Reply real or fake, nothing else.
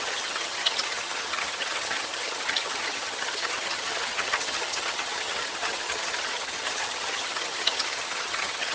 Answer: fake